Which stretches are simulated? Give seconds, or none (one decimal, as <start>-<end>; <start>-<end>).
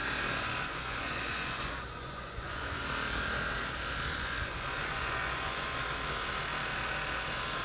0.0-2.8; 4.1-5.8